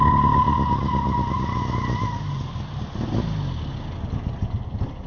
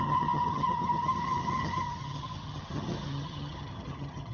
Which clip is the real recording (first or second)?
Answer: first